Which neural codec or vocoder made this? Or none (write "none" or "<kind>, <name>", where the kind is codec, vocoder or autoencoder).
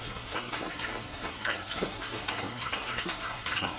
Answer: codec, SNAC